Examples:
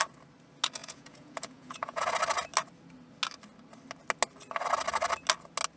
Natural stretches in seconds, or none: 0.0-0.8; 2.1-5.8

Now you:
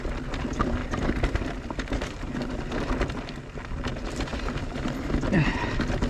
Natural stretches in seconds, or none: 0.0-0.8; 1.5-4.3

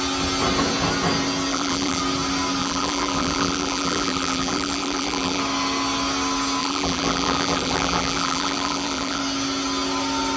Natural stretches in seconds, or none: 0.0-1.5; 2.0-2.6; 5.4-6.6; 9.2-10.4

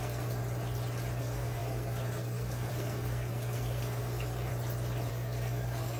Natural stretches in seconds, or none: 0.4-1.2; 4.5-5.1

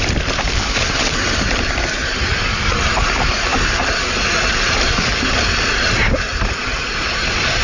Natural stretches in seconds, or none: 0.0-7.6